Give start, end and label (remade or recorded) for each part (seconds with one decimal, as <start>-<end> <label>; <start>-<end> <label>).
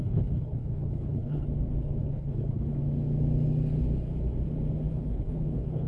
0.0-1.4 remade; 1.4-2.0 recorded; 2.0-2.8 remade; 2.8-4.9 recorded; 4.9-5.9 remade